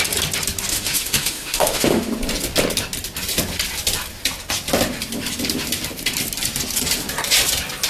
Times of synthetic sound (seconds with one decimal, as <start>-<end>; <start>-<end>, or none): 0.7-2.1